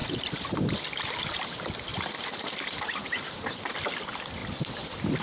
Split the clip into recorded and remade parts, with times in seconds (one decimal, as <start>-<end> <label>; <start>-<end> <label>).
0.0-1.2 remade; 1.2-1.9 recorded; 1.9-3.5 remade; 3.5-4.4 recorded; 4.4-5.2 remade